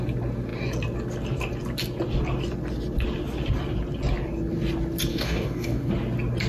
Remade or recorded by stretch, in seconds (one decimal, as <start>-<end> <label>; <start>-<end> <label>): 0.0-5.1 recorded; 5.1-5.9 remade; 5.9-6.5 recorded